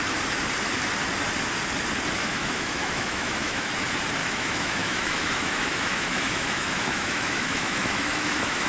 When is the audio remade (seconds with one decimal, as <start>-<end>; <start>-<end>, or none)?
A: 2.2-3.7; 4.2-8.7